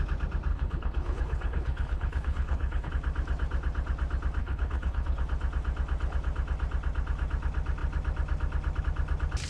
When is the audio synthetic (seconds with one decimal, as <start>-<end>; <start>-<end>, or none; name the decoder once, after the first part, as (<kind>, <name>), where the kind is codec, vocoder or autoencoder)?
0.5-2.9 (codec, HILCodec); 4.4-5.2